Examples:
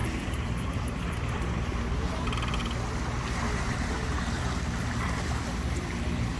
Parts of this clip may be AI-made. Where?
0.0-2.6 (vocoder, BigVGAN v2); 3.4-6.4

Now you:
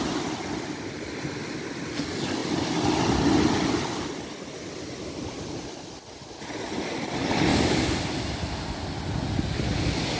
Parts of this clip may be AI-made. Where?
none